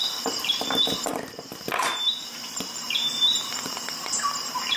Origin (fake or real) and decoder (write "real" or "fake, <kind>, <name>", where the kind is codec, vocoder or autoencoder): fake, vocoder, BigVGAN v2